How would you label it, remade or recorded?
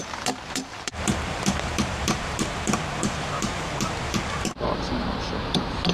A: remade